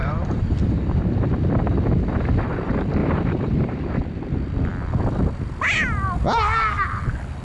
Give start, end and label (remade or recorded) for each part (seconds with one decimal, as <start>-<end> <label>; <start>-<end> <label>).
0.0-1.0 remade; 1.0-3.0 recorded; 3.0-4.0 remade; 4.0-7.4 recorded